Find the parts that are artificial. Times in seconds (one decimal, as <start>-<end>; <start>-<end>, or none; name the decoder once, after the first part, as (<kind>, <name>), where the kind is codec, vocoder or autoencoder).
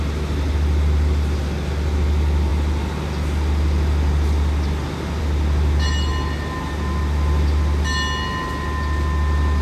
none